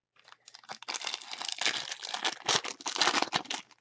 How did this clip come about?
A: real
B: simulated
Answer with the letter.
A